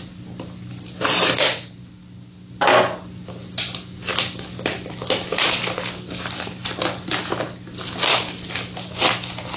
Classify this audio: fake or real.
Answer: real